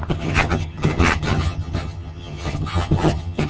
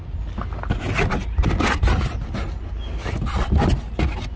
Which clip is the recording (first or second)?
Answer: second